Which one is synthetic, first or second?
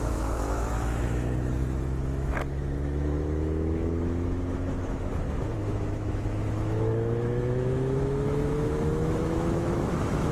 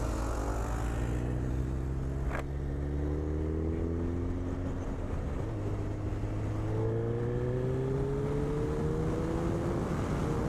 first